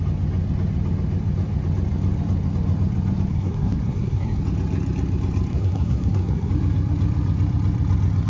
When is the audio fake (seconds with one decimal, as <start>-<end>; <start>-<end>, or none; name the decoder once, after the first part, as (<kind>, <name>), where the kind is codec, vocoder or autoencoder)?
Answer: 3.3-4.4 (codec, SNAC); 5.5-6.5